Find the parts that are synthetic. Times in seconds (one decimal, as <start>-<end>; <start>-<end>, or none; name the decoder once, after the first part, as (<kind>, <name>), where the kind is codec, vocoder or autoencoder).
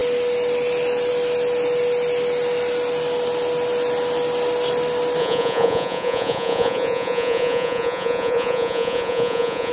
5.2-9.7 (vocoder, Vocos)